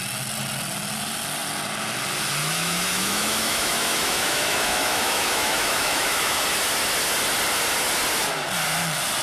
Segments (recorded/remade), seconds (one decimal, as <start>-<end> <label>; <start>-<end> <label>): 0.0-2.4 recorded; 2.4-6.4 remade; 6.4-9.2 recorded